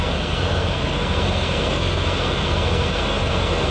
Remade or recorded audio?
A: remade